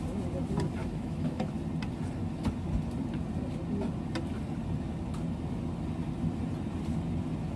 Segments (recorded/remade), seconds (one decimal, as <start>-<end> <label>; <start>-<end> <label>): 0.0-0.8 recorded; 0.8-1.5 remade; 1.5-7.6 recorded